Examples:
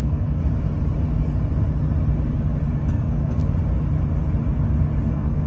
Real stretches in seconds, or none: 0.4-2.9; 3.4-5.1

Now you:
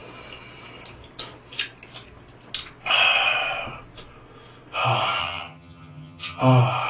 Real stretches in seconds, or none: 0.0-5.2; 6.4-6.9

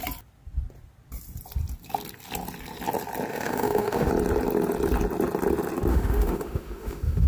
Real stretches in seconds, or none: 0.0-3.3; 4.1-5.9

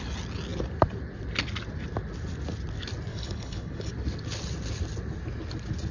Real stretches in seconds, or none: 0.0-3.1; 3.9-5.9

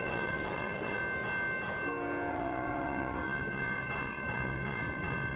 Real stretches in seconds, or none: 1.0-2.3